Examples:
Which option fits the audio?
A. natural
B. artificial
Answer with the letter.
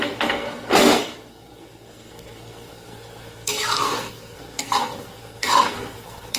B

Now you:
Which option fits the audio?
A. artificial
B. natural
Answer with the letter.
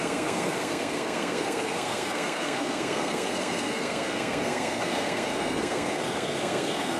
A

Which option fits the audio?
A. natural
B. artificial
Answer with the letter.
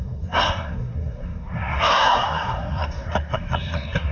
B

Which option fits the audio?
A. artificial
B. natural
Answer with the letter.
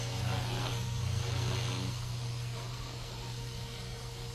A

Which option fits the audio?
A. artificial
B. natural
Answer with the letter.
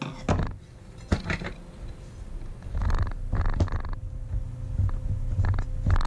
B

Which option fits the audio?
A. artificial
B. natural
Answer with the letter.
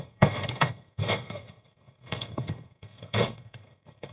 A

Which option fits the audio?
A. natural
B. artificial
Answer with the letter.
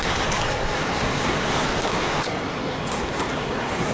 B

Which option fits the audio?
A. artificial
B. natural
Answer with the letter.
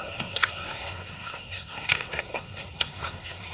A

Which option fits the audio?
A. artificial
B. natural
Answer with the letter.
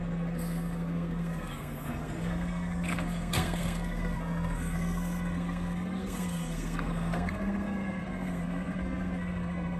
A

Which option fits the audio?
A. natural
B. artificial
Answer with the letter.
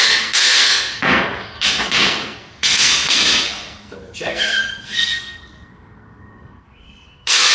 B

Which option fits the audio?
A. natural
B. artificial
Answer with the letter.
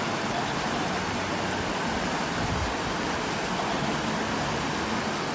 A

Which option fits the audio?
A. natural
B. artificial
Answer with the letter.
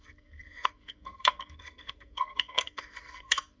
B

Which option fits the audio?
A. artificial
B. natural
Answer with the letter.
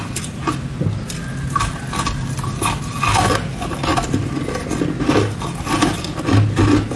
B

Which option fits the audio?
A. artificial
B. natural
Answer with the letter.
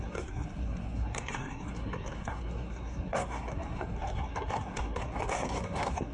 A